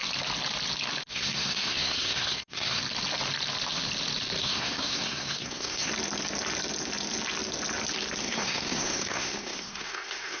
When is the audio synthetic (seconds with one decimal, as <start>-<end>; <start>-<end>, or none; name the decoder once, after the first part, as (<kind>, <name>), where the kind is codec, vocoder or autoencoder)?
1.1-2.8 (codec, SNAC); 4.4-5.9; 8.2-10.4

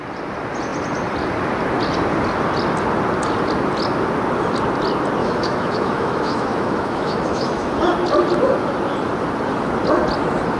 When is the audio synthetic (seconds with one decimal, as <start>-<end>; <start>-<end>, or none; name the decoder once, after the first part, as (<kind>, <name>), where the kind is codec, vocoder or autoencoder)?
5.2-7.8 (autoencoder, DAC-VAE)

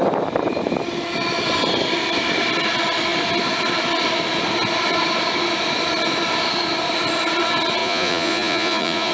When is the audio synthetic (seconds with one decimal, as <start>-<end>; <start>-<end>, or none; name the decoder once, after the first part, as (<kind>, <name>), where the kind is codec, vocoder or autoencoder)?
7.8-9.1 (vocoder, Vocos)

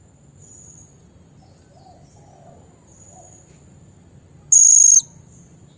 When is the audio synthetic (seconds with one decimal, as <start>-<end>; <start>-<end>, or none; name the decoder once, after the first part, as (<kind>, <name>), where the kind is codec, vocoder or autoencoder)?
none

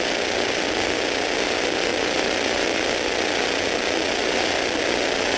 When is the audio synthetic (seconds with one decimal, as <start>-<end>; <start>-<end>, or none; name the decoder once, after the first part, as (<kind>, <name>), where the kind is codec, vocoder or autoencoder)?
1.9-3.1 (vocoder, BigVGAN v2)

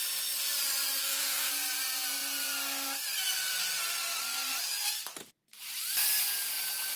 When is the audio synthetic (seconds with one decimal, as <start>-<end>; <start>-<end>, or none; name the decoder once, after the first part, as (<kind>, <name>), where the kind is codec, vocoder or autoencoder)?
1.0-1.5 (codec, DAC)